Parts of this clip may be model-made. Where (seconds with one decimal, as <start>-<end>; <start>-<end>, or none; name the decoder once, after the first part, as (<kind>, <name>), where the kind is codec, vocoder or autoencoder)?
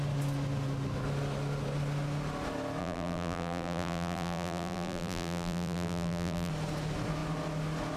2.8-6.5 (vocoder, BigVGAN v2)